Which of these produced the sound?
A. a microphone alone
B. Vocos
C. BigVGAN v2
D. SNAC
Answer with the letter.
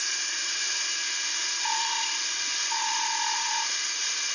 B